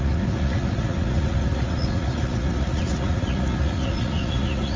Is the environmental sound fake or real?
fake